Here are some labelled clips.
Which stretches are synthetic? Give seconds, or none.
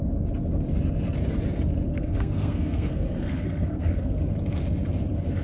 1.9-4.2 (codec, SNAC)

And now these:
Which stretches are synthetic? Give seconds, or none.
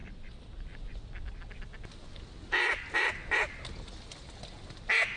none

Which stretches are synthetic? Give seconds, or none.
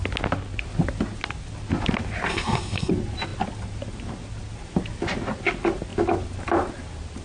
2.3-2.9 (codec, SNAC)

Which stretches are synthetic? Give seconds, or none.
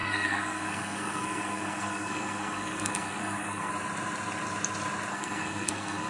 0.0-3.7 (codec, SNAC); 5.1-6.1